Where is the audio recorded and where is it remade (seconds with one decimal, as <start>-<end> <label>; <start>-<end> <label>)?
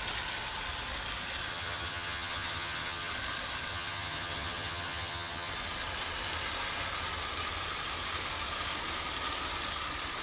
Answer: 0.0-1.5 recorded; 1.5-3.1 remade; 3.1-3.7 recorded; 3.7-5.5 remade; 5.5-10.2 recorded